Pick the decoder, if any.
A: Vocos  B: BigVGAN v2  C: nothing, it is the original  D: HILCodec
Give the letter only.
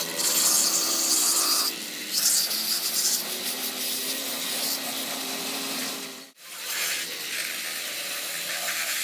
B